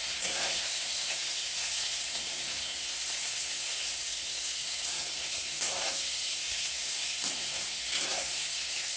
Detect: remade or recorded remade